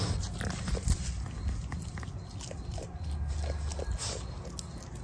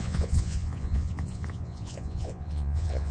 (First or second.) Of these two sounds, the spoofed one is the second